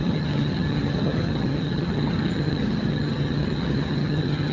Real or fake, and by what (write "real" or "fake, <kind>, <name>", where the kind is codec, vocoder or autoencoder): fake, vocoder, HiFi-GAN